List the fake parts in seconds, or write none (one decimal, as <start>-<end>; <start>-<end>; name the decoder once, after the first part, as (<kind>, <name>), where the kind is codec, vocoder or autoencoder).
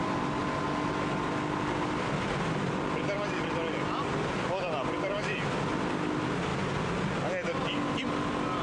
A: none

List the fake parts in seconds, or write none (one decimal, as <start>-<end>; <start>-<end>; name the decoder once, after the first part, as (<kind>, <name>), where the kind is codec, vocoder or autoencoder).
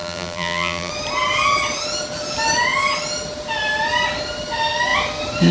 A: 0.0-0.9 (vocoder, BigVGAN v2)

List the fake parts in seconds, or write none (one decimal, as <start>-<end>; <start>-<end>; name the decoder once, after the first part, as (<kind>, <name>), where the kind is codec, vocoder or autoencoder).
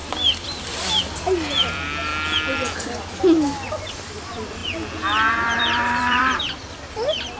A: 0.0-2.1 (vocoder, BigVGAN v2); 3.9-4.6; 5.3-7.4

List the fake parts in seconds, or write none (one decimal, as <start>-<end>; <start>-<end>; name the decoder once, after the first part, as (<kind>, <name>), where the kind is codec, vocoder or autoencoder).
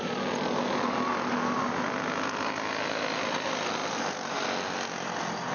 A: none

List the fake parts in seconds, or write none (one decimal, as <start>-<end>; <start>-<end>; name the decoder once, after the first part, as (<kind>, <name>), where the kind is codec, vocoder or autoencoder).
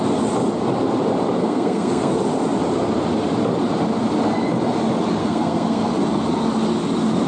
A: 1.4-2.1 (codec, SNAC); 5.2-5.9